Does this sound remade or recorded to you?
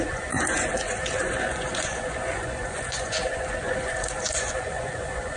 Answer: remade